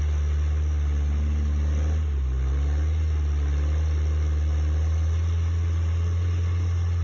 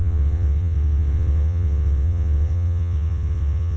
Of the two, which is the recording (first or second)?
first